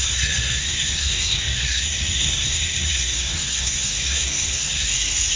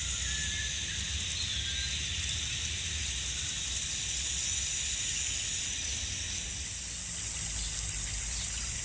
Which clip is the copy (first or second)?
first